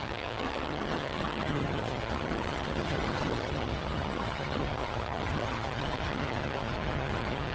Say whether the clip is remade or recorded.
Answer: remade